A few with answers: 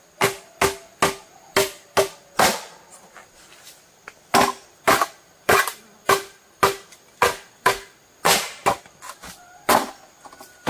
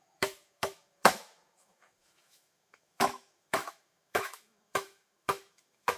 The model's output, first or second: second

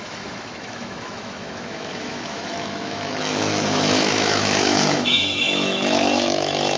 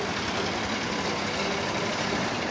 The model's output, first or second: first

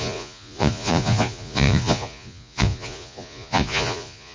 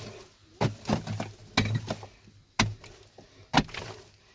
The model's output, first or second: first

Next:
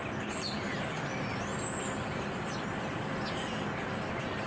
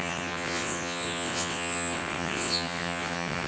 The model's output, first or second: second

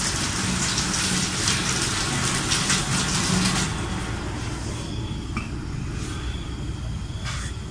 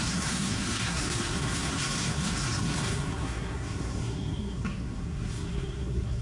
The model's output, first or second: second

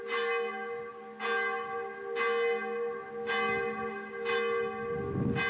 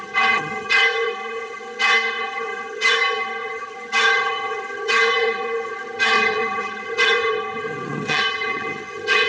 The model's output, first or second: second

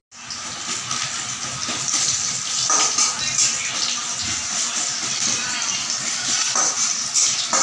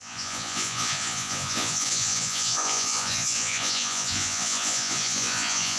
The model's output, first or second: second